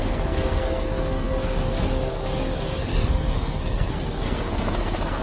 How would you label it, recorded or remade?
remade